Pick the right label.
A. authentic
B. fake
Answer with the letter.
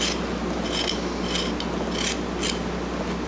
A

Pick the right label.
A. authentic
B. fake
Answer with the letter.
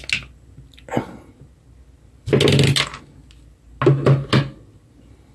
A